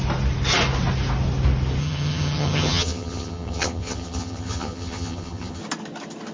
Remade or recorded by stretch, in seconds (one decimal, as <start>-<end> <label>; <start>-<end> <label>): 0.0-1.8 recorded; 1.8-5.6 remade; 5.6-6.3 recorded